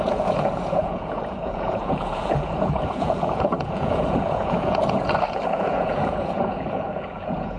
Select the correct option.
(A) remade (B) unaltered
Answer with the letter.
A